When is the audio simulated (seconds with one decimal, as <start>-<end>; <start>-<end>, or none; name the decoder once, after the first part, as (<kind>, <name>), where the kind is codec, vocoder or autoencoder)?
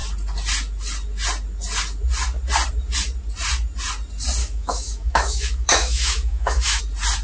4.4-6.8 (autoencoder, DAC-VAE)